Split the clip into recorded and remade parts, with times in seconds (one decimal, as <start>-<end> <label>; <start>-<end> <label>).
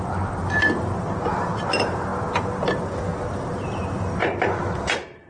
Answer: 0.0-5.3 recorded